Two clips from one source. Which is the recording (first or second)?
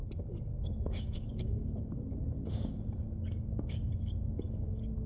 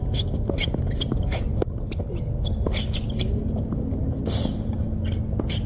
second